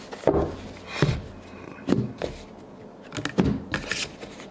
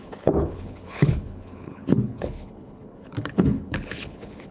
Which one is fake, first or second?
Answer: second